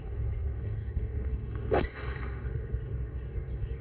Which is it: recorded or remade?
remade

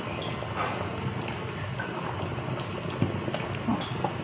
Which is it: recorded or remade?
recorded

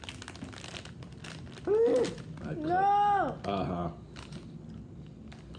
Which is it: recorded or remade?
recorded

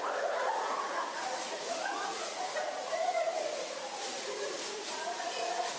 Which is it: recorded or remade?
remade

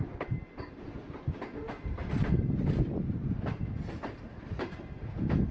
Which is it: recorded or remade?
recorded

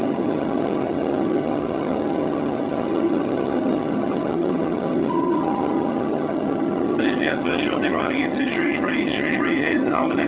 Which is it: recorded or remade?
remade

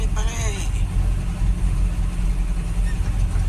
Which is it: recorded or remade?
recorded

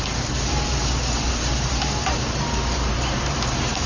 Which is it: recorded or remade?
remade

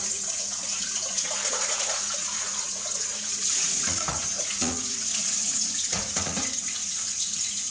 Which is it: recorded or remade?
remade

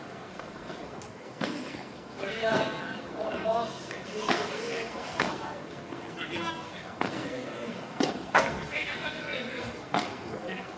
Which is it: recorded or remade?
remade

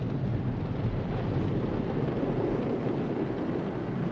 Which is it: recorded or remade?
recorded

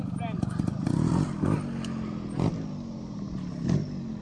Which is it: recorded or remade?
recorded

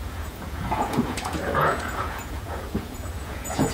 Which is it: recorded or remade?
remade